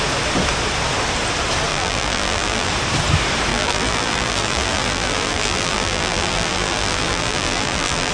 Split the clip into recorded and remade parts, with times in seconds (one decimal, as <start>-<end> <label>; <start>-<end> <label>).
0.0-1.7 recorded; 1.7-2.7 remade; 2.7-3.5 recorded; 3.5-8.1 remade